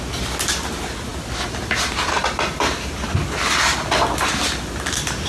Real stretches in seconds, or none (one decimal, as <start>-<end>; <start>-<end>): 0.0-5.3